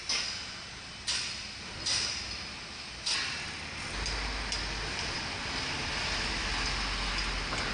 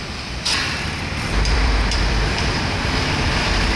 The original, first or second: first